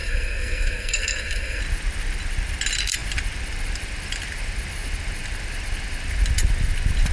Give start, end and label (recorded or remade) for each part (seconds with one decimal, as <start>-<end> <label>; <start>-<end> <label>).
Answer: 0.0-1.6 remade; 1.6-7.1 recorded